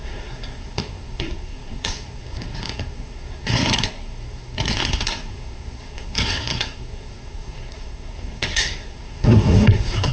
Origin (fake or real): fake